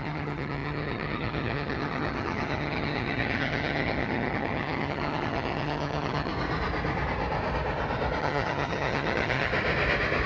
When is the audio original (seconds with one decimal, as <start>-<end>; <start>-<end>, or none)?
6.3-8.2; 9.5-10.3